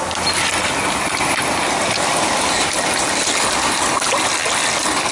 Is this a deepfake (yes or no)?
no